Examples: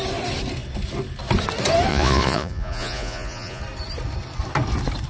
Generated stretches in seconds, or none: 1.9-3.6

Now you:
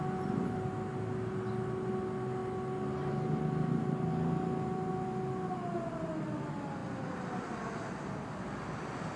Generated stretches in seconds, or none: none